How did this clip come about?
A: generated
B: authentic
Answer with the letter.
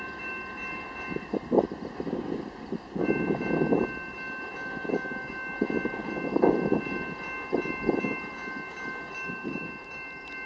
B